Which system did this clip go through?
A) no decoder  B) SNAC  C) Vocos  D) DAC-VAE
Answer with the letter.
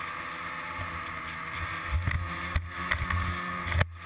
A